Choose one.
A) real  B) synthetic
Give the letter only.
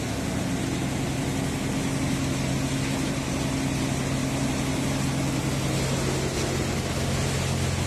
A